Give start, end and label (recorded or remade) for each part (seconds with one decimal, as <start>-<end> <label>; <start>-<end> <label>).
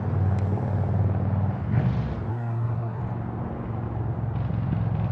0.0-2.3 recorded; 2.3-3.0 remade; 3.0-5.1 recorded